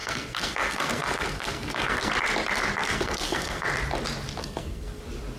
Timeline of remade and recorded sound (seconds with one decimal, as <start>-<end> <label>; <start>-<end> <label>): 0.0-2.1 remade; 2.1-2.8 recorded; 2.8-3.7 remade; 3.7-4.4 recorded; 4.4-5.0 remade; 5.0-5.4 recorded

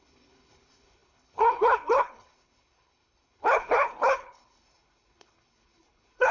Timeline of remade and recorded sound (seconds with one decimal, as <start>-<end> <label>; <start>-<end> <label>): 0.0-6.3 remade